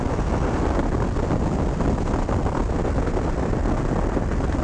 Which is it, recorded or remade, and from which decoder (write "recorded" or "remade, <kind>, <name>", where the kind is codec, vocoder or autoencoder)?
recorded